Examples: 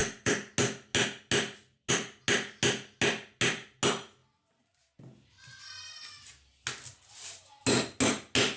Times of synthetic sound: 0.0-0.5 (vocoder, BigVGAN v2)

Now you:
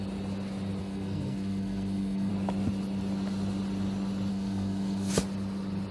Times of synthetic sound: 0.8-2.3 (codec, SNAC); 4.3-5.1

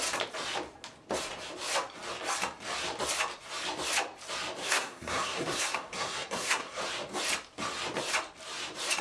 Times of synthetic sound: 4.6-6.8 (codec, SNAC)